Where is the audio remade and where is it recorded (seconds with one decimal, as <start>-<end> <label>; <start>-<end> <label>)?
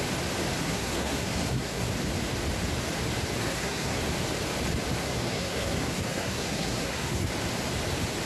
0.0-0.6 recorded; 0.6-1.9 remade; 1.9-3.4 recorded; 3.4-4.0 remade; 4.0-5.0 recorded; 5.0-7.3 remade; 7.3-8.3 recorded